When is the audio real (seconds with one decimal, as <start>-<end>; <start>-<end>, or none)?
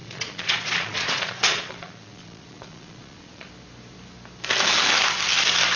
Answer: 3.5-5.8